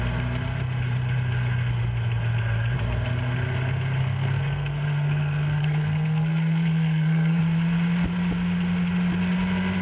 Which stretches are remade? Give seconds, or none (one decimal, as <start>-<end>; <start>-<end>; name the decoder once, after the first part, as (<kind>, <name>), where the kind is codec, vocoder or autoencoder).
4.0-7.4 (codec, SNAC)